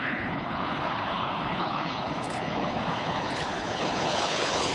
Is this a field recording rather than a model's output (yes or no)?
no